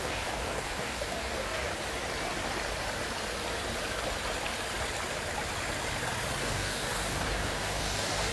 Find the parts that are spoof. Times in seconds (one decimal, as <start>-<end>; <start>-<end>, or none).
0.0-1.7; 6.4-8.3